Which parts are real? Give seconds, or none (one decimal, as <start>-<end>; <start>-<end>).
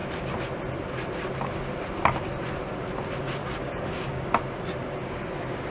0.0-3.4; 4.3-5.0